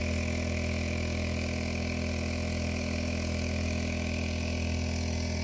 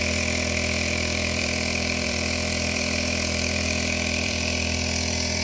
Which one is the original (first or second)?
first